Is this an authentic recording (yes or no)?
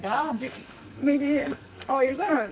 no